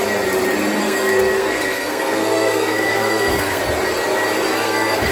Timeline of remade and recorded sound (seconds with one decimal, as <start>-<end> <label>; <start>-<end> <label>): 0.0-0.8 recorded; 0.8-3.6 remade; 3.6-4.5 recorded; 4.5-5.1 remade